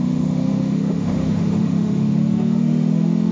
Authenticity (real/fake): fake